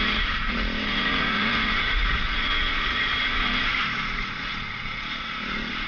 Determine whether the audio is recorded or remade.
remade